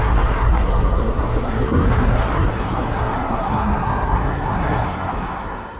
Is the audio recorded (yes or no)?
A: no